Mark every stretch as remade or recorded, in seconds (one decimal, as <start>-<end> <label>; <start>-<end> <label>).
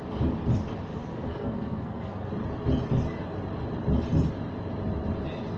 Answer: 0.0-0.9 recorded; 0.9-2.3 remade; 2.3-5.6 recorded